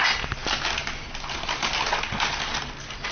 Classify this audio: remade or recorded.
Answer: recorded